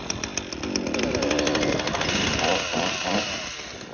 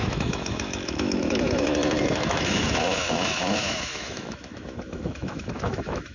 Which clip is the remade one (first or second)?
second